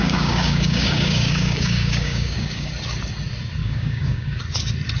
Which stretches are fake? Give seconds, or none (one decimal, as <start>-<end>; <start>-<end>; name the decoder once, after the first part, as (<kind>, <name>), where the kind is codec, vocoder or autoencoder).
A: 0.0-2.7 (codec, DAC); 3.6-4.4